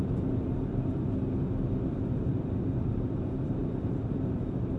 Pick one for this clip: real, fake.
fake